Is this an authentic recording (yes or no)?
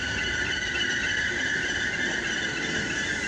yes